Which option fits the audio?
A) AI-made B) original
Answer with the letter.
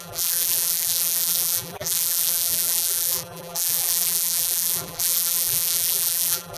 A